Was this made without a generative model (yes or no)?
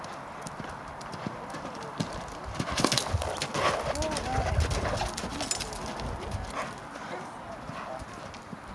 yes